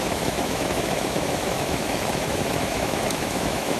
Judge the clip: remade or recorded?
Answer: remade